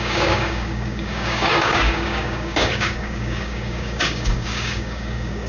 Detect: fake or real fake